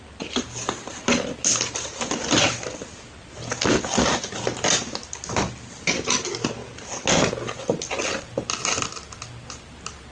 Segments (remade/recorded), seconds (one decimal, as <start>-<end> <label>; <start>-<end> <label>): 0.0-10.1 recorded

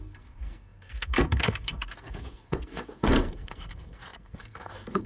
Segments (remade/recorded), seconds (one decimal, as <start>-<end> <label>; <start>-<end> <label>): 0.0-5.1 remade

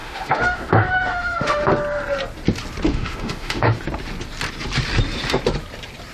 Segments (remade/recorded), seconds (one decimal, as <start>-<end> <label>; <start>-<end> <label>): 0.0-1.7 remade; 1.7-2.9 recorded; 2.9-3.8 remade; 3.8-6.1 recorded

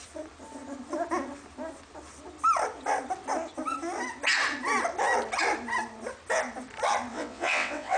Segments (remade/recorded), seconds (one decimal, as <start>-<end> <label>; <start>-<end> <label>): 0.0-7.1 recorded; 7.1-8.0 remade

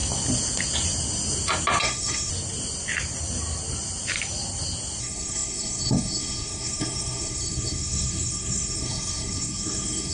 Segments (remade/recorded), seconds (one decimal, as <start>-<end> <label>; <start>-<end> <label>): 0.0-1.8 recorded; 1.8-2.3 remade; 2.3-5.0 recorded; 5.0-10.1 remade